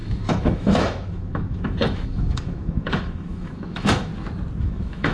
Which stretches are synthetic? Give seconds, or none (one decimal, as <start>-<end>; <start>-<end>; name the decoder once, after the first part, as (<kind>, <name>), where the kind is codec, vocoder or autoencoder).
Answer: 0.0-4.1 (autoencoder, DAC-VAE); 4.6-5.1